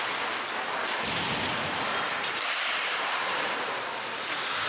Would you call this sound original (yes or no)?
yes